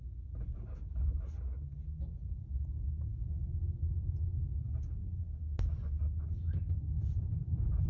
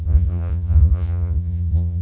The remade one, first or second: second